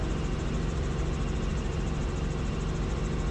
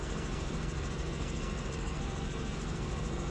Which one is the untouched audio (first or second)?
first